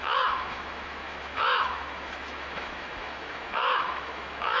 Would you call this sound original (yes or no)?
no